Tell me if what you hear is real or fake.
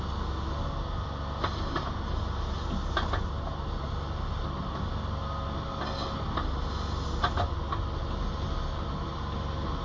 real